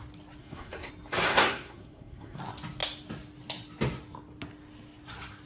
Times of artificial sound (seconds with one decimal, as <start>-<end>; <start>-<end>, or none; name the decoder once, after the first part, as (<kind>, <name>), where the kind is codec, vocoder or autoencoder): 0.4-0.9 (codec, SNAC); 1.3-2.4